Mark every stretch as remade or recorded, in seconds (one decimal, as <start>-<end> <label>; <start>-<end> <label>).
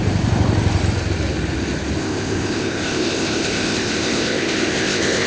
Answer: 0.0-2.0 recorded; 2.0-5.3 remade